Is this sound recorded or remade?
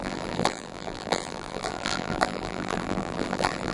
remade